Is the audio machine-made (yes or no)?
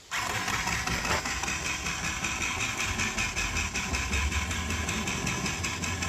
no